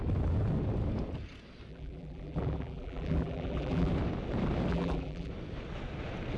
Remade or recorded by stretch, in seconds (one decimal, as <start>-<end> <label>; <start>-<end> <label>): 0.0-1.7 recorded; 1.7-3.9 remade; 3.9-4.7 recorded; 4.7-5.3 remade; 5.3-6.4 recorded